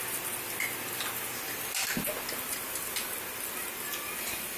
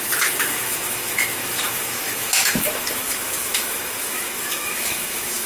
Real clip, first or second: first